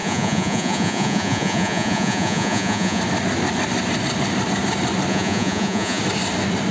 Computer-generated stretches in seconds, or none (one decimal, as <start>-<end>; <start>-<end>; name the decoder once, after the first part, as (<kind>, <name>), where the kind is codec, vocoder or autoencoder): 0.0-3.0 (vocoder, Vocos); 5.1-6.0